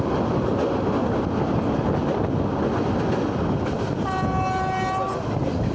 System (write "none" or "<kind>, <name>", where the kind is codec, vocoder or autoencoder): none